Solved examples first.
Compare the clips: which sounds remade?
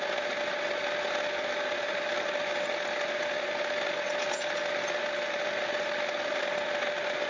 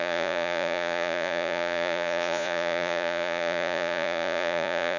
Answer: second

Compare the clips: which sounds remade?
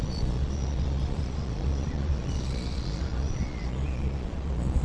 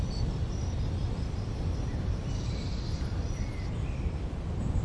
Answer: first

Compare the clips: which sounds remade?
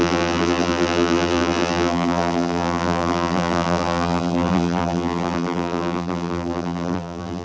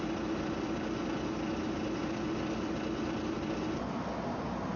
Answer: first